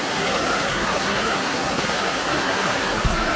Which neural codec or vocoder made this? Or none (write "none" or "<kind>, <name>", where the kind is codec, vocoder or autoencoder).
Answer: codec, SNAC